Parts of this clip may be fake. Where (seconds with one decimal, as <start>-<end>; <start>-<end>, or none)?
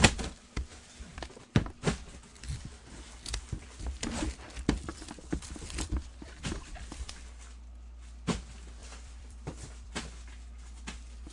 2.3-3.2; 4.9-7.1; 8.8-9.9